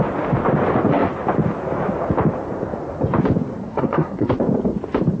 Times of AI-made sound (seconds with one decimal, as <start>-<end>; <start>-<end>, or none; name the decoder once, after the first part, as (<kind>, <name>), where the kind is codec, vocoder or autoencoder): 3.7-4.3 (codec, SNAC)